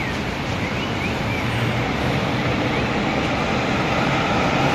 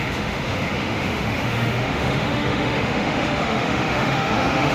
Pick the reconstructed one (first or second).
second